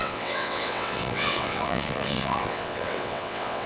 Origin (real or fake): fake